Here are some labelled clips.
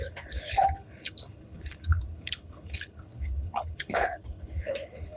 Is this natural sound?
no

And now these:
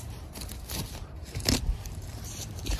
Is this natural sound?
no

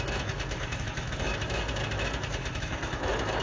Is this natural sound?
no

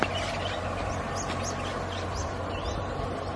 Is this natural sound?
yes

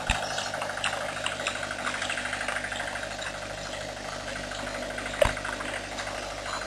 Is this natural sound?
yes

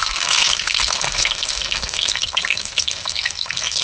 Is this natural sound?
no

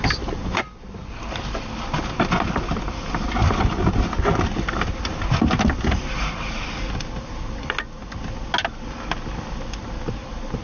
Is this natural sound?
yes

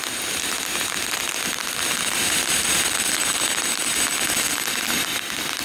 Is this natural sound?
yes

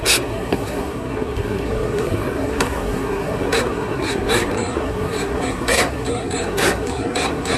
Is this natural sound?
no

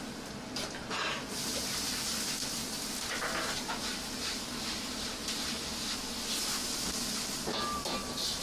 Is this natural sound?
yes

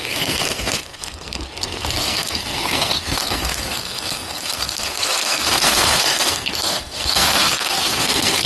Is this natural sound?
no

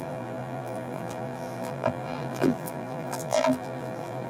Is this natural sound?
no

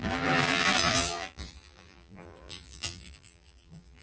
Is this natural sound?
no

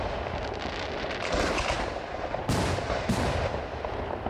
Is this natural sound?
yes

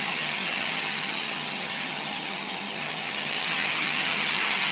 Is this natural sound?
no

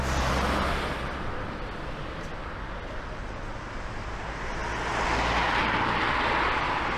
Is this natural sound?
yes